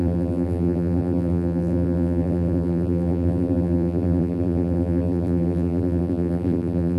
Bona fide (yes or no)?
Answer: no